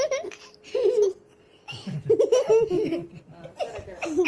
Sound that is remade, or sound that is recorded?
recorded